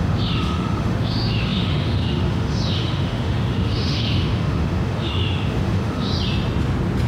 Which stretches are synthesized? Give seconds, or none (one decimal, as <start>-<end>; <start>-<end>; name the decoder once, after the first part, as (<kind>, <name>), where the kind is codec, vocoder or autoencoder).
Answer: 0.0-6.1 (autoencoder, DAC-VAE)